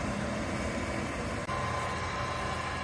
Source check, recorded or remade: recorded